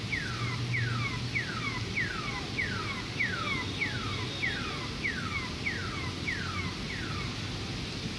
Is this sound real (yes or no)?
yes